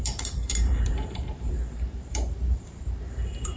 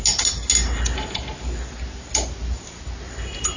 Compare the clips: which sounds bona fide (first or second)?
second